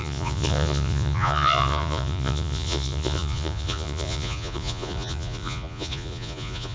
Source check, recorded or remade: remade